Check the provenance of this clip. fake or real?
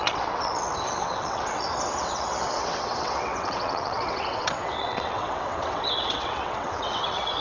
fake